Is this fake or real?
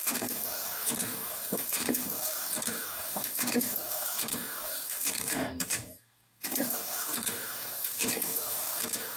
fake